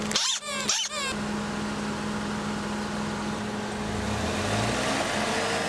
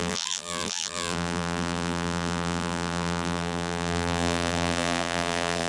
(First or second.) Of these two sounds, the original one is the first